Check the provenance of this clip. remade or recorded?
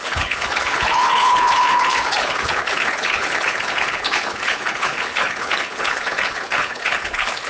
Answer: remade